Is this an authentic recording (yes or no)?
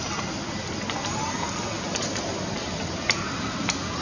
yes